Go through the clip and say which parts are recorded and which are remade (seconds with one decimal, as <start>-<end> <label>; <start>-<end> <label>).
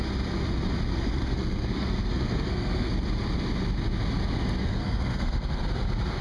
0.0-0.9 recorded; 0.9-2.9 remade; 2.9-4.6 recorded; 4.6-5.6 remade; 5.6-6.2 recorded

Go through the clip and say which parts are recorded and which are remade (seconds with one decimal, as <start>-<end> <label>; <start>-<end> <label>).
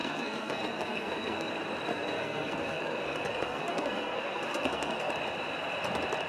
0.0-1.5 remade; 1.5-1.9 recorded; 1.9-5.1 remade; 5.1-6.3 recorded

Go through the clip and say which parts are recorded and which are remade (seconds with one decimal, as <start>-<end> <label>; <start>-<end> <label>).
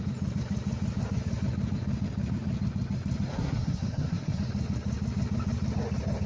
0.0-3.3 recorded; 3.3-4.4 remade; 4.4-6.3 recorded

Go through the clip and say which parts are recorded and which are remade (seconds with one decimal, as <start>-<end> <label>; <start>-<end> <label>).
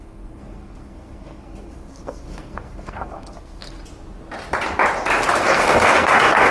0.0-3.6 remade; 3.6-5.3 recorded; 5.3-6.5 remade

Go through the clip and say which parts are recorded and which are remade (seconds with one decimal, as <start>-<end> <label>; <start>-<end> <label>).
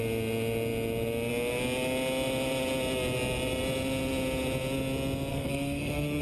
0.0-5.3 recorded; 5.3-6.2 remade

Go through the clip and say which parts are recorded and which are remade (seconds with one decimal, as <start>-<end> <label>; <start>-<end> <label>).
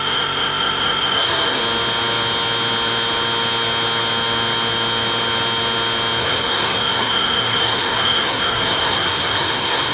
0.0-1.6 remade; 1.6-6.2 recorded; 6.2-9.9 remade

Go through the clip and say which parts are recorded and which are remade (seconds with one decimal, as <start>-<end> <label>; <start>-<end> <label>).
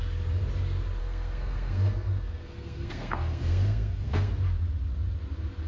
0.0-1.0 recorded; 1.0-4.3 remade; 4.3-5.7 recorded